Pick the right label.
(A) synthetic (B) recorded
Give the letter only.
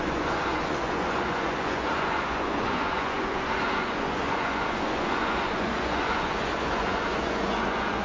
A